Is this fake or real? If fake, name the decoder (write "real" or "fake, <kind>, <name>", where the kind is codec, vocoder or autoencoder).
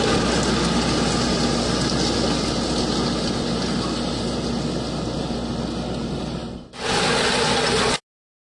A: real